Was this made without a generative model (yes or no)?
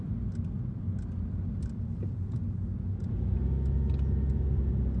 yes